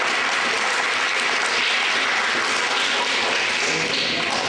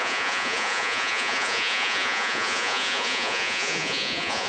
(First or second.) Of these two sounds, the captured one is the first